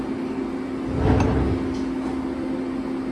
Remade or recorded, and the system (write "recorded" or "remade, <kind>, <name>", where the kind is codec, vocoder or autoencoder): recorded